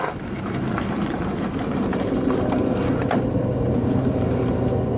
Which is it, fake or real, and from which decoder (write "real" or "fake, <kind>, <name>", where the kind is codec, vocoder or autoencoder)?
fake, vocoder, BigVGAN v2